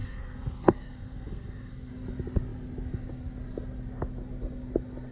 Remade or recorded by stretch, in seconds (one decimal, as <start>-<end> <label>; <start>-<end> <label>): 0.0-1.9 remade; 1.9-5.1 recorded